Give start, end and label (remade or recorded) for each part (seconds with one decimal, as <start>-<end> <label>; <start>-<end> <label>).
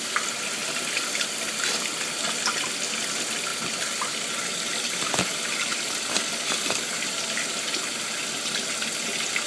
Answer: 0.0-9.5 recorded